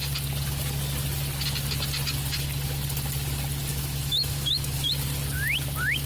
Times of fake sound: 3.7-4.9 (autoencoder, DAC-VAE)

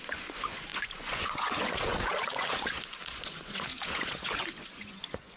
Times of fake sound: 0.0-5.4 (vocoder, Vocos)

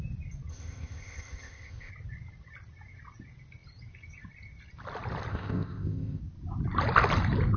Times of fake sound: 0.5-1.9 (codec, ZipCodec); 5.3-6.2